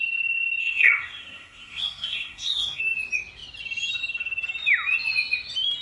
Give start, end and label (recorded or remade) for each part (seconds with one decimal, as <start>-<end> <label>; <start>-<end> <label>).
0.0-0.6 recorded; 0.6-2.8 remade; 2.8-5.8 recorded